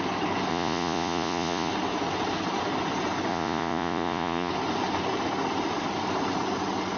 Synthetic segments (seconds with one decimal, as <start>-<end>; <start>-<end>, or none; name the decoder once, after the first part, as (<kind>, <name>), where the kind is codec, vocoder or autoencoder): 0.5-1.7 (vocoder, Vocos); 3.3-4.5